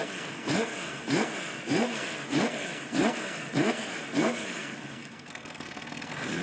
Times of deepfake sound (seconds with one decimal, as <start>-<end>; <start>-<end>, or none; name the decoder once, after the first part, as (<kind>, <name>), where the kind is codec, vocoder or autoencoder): 0.0-6.4 (codec, SNAC)